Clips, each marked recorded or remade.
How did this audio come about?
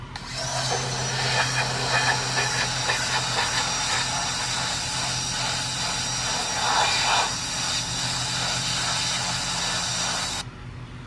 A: recorded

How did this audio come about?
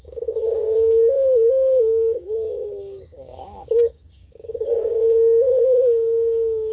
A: remade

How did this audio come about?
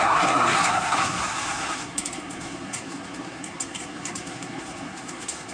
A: remade